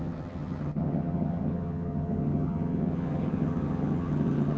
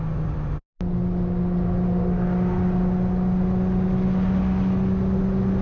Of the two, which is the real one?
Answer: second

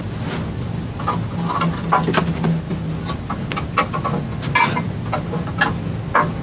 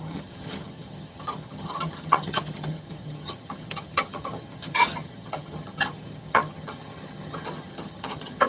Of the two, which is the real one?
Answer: first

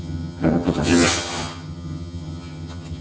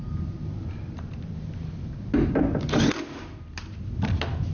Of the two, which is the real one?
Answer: second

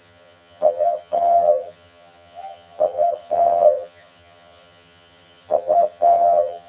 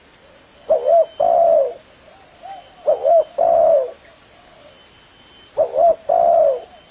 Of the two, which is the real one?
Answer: second